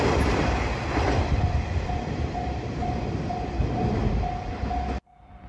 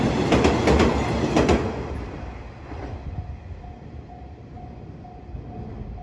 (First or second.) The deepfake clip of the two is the first